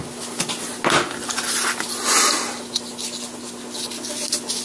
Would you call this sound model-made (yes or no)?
no